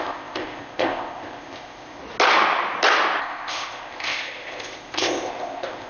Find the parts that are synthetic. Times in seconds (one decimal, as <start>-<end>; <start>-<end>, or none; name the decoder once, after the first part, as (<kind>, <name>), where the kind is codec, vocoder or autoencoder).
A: 0.0-2.0 (codec, ZipCodec); 3.2-5.9